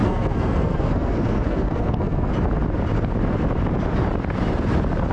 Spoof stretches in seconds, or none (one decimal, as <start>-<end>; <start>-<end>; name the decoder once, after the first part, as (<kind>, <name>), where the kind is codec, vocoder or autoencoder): 0.0-2.3 (codec, SNAC)

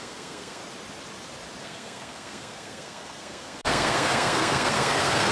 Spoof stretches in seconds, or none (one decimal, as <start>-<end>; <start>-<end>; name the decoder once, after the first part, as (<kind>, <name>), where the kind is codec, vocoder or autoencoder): 0.0-0.6 (codec, SNAC); 1.6-5.3

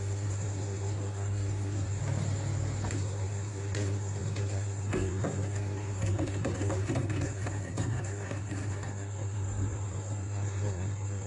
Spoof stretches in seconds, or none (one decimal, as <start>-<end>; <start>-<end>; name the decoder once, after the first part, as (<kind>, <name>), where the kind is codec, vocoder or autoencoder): 0.0-2.0 (codec, SNAC); 2.9-11.3